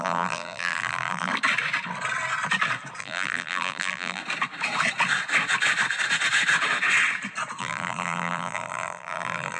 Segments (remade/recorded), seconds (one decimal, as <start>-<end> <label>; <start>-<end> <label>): 0.0-1.3 remade; 1.3-3.0 recorded; 3.0-4.2 remade; 4.2-7.6 recorded; 7.6-9.6 remade

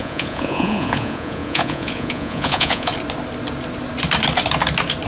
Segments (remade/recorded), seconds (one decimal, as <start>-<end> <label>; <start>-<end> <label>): 0.0-2.9 remade; 2.9-5.1 recorded

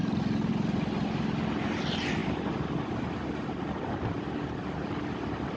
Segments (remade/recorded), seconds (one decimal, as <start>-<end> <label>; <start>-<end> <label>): 0.0-0.5 remade; 0.5-5.6 recorded

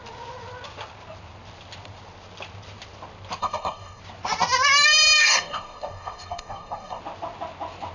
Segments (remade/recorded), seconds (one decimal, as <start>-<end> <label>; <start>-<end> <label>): 0.0-3.4 recorded; 3.4-4.0 remade; 4.0-5.2 recorded; 5.2-7.0 remade; 7.0-7.9 recorded

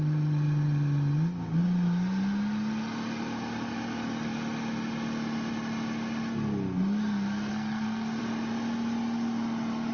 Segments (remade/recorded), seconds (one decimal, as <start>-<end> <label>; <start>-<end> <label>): 0.0-7.5 recorded; 7.5-8.2 remade; 8.2-9.9 recorded

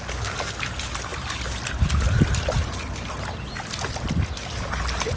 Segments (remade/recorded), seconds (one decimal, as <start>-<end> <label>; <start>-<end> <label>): 0.0-5.2 recorded